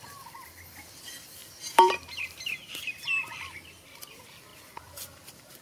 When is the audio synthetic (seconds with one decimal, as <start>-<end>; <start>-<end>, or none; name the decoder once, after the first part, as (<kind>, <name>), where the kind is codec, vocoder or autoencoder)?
1.4-3.4 (vocoder, BigVGAN v2); 4.5-5.6